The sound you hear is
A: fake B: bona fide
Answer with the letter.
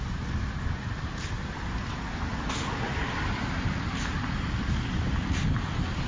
B